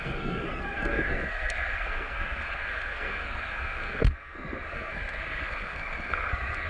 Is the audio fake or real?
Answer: fake